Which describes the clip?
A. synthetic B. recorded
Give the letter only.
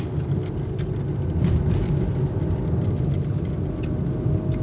B